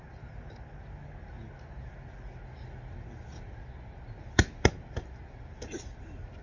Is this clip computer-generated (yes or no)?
no